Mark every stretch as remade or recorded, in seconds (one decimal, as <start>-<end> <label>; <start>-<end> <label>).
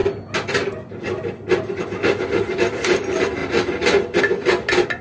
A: 0.0-3.4 recorded; 3.4-4.2 remade; 4.2-5.0 recorded